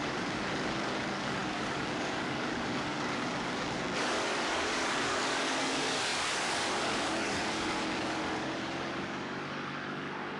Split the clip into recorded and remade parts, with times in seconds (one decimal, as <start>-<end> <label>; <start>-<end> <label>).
0.0-10.4 remade

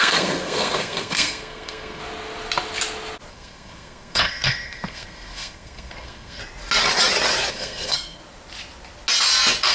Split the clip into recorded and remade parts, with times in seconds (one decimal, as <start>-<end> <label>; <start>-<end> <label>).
0.0-2.0 remade; 2.0-3.3 recorded; 3.3-6.4 remade; 6.4-7.5 recorded; 7.5-8.2 remade; 8.2-9.7 recorded

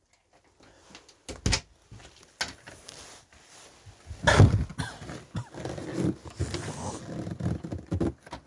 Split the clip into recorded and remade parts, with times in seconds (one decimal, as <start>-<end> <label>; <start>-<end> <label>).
0.0-8.5 recorded